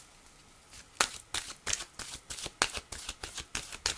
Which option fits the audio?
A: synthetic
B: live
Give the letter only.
B